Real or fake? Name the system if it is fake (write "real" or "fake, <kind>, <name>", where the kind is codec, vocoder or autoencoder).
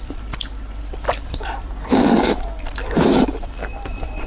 fake, vocoder, BigVGAN v2